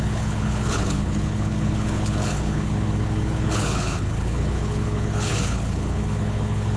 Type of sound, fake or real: fake